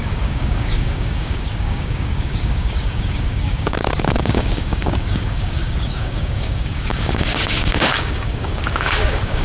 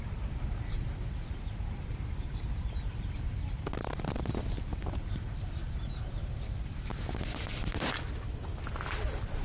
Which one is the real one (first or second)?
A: second